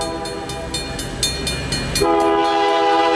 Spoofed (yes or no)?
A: no